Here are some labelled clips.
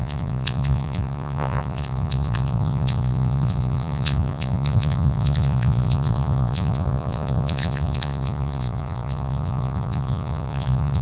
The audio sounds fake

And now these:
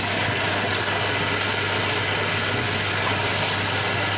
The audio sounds real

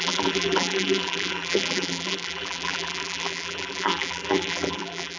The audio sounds fake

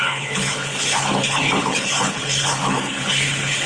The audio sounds fake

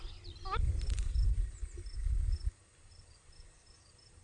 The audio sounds real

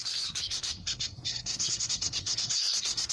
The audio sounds fake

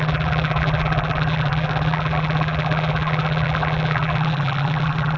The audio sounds fake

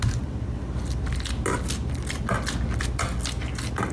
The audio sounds real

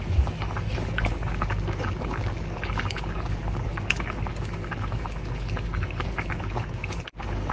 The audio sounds fake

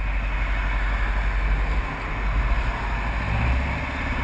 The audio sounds real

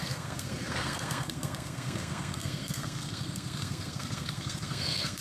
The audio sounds fake